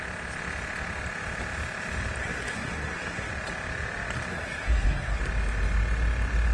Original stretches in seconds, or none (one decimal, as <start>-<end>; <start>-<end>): 0.0-2.2; 3.3-4.3; 5.2-6.5